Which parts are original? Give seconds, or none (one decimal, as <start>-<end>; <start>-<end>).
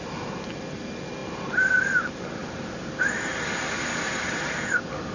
0.0-5.1